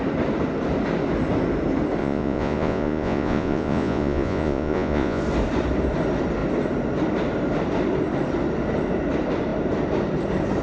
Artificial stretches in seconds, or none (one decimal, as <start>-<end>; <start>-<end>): 2.0-5.2